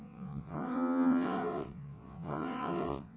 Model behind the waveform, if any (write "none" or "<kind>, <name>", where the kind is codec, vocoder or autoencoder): vocoder, WaveNeXt